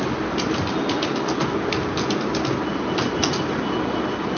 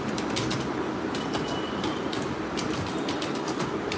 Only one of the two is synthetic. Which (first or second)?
second